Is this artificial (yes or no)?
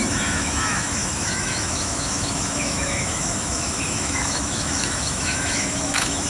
yes